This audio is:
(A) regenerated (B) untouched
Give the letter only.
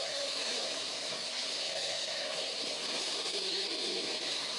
A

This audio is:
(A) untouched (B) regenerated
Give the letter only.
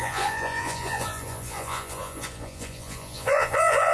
B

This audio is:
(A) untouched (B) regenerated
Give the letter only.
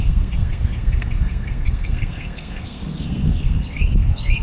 B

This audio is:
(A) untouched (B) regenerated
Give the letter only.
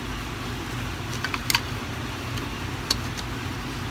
A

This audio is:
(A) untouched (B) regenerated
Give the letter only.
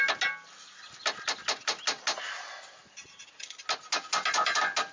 A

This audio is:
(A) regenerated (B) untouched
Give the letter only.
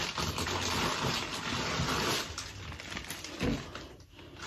B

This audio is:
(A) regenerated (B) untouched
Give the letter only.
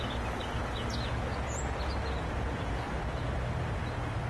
B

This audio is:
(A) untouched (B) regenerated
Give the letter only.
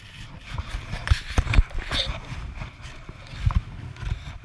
A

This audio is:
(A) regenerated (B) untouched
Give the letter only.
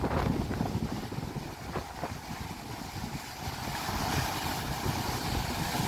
B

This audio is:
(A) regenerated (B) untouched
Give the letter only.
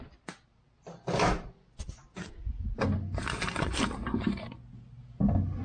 B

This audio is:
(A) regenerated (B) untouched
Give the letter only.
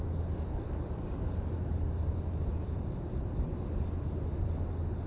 B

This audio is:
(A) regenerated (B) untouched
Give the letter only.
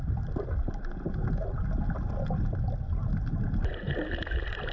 B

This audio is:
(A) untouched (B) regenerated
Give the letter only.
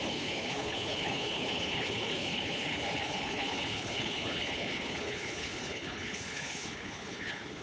B